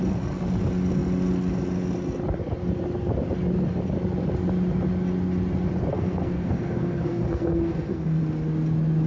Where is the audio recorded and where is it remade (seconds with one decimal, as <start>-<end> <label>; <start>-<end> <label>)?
0.0-5.9 recorded; 5.9-8.2 remade; 8.2-9.1 recorded